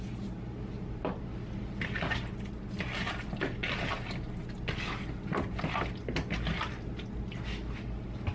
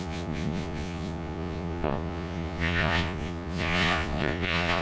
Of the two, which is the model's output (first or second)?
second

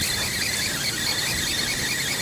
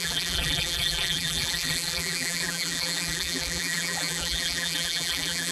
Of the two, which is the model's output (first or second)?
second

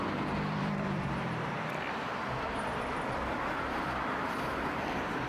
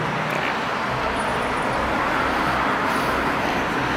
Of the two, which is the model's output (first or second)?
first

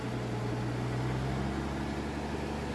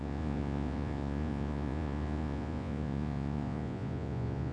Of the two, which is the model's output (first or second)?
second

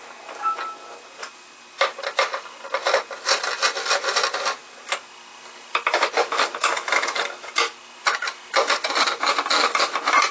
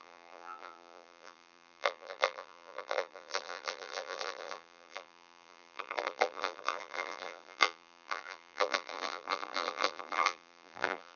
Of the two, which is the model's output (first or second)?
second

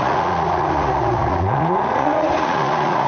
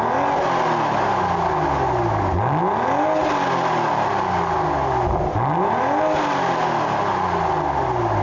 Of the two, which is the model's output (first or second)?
first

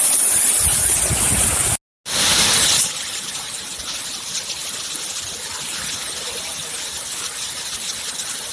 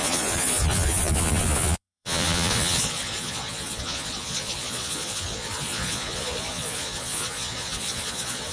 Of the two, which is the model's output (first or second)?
second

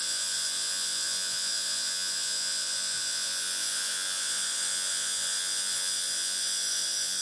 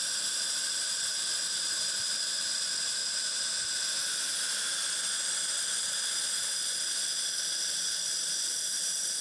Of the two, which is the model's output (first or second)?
first